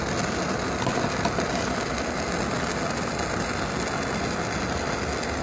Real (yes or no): yes